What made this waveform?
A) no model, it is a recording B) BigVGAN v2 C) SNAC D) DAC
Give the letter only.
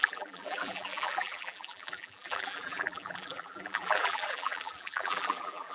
B